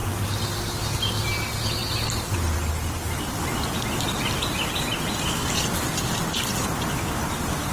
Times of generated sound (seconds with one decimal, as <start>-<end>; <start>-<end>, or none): none